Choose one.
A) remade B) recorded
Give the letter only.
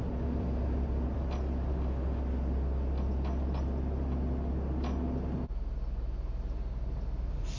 B